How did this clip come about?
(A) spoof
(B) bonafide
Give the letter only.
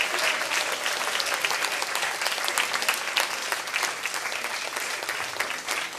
B